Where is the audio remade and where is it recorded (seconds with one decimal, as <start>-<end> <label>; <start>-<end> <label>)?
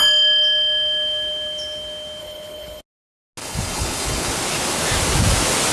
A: 0.0-2.2 recorded; 2.2-2.8 remade; 2.8-3.4 recorded; 3.4-4.3 remade; 4.3-5.7 recorded